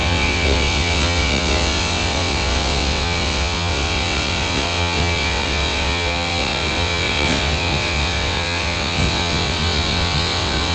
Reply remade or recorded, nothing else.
remade